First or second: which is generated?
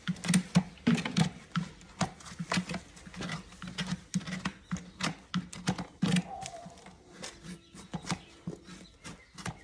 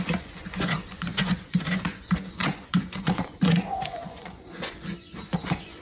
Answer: second